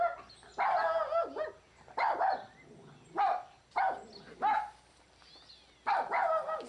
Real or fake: real